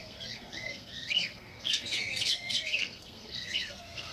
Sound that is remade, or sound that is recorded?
remade